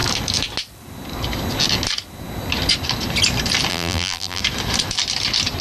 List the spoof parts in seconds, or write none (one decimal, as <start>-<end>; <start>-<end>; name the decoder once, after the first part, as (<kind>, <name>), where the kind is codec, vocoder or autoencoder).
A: 3.7-4.4 (vocoder, BigVGAN v2)